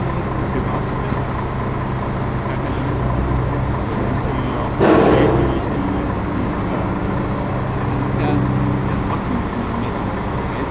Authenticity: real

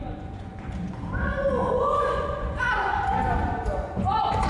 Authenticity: fake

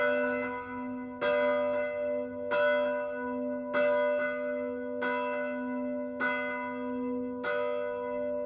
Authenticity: real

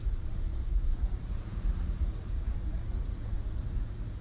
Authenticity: fake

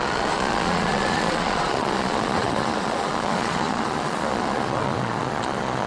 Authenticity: fake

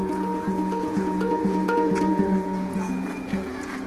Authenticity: fake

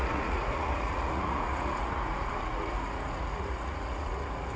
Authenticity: fake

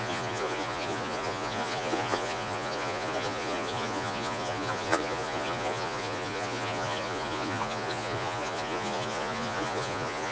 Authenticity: fake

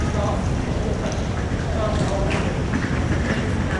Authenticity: real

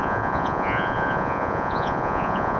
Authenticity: fake